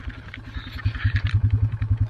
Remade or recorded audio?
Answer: remade